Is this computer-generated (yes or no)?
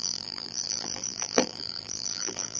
yes